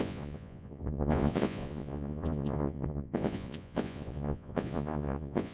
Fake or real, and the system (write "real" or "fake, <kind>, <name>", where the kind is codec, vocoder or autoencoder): fake, vocoder, Vocos